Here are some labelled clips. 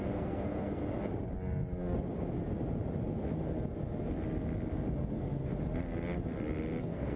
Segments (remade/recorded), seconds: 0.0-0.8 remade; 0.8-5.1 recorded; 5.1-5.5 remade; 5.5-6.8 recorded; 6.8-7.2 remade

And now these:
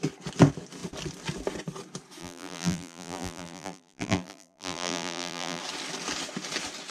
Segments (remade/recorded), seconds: 0.0-2.2 recorded; 2.2-5.6 remade; 5.6-6.9 recorded